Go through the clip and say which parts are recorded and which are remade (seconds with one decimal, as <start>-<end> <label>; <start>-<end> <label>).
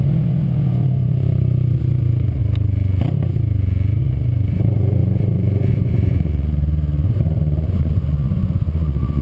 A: 0.0-2.4 remade; 2.4-4.0 recorded; 4.0-9.2 remade